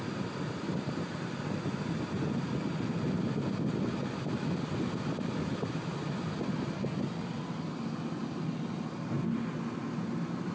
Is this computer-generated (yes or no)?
no